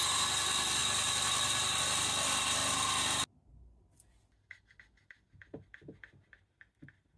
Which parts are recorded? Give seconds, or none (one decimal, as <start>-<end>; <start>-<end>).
0.0-7.2